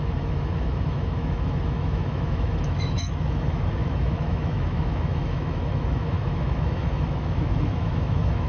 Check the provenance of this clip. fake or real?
fake